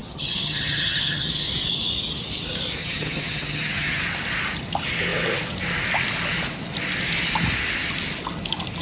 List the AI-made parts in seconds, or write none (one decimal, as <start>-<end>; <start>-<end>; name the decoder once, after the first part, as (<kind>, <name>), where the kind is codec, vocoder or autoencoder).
0.0-1.4 (vocoder, HiFi-GAN); 2.8-4.0